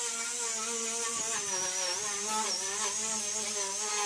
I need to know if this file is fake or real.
real